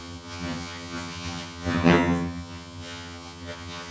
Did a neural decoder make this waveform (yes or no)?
yes